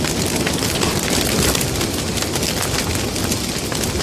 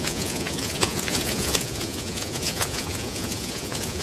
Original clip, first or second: first